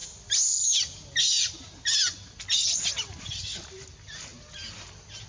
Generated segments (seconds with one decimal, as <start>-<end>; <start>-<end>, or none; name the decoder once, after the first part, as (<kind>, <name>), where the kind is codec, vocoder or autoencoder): none